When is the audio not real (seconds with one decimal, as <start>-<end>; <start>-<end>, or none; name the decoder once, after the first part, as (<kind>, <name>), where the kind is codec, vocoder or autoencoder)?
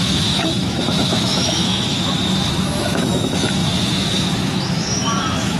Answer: 0.0-5.6 (autoencoder, DAC-VAE)